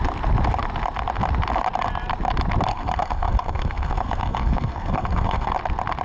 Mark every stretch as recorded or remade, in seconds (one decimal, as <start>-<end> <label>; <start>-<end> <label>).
0.0-2.7 recorded; 2.7-5.5 remade; 5.5-6.0 recorded